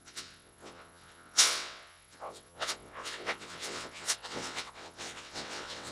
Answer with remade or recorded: remade